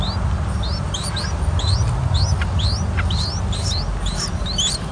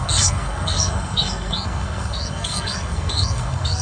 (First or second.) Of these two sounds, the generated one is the second